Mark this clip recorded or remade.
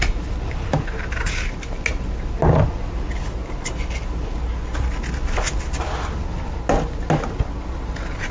recorded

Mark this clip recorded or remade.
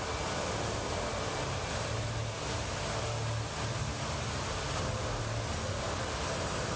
recorded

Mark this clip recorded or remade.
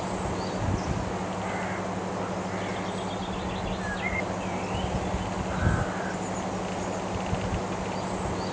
recorded